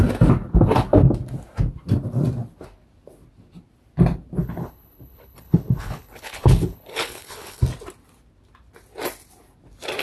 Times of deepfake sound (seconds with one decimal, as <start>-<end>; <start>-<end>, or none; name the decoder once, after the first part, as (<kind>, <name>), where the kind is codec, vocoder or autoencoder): 4.4-7.6 (codec, HILCodec)